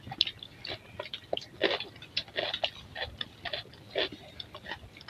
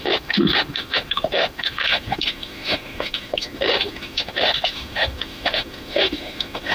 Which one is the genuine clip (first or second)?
first